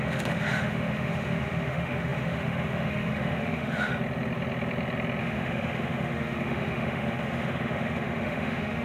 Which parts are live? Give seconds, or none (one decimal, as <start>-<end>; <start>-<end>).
3.9-5.2